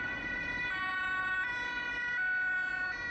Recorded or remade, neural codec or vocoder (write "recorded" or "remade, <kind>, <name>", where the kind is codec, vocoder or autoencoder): recorded